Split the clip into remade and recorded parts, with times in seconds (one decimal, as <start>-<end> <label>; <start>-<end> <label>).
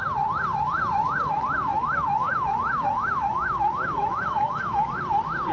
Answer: 0.0-1.7 recorded; 1.7-5.0 remade; 5.0-5.5 recorded